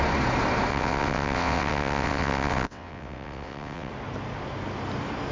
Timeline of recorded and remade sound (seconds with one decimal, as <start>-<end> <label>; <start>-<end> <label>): 0.0-0.7 recorded; 0.7-3.9 remade; 3.9-5.3 recorded